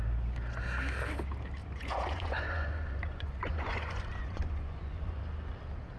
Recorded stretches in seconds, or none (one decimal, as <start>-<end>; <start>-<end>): 0.0-1.6; 5.2-6.0